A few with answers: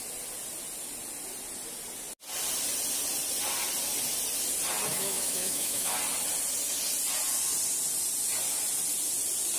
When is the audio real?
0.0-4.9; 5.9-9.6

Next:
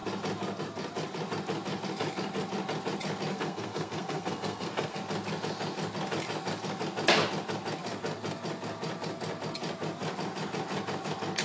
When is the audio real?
0.0-3.3; 5.0-11.4

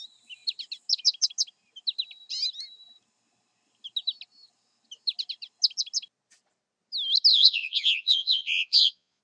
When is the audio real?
0.0-7.3

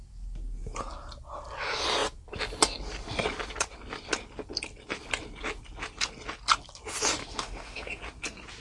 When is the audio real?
0.0-7.2; 8.0-8.6

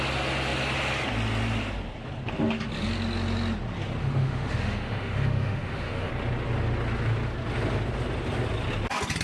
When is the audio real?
0.0-4.0; 6.1-9.2

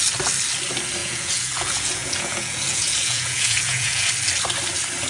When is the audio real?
0.0-1.0; 4.1-5.1

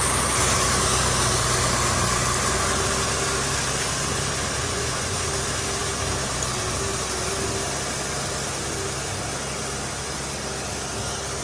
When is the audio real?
0.0-4.6; 5.3-11.4

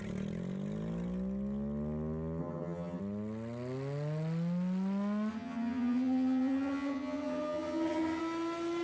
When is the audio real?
0.0-2.4; 3.0-5.3; 8.2-8.8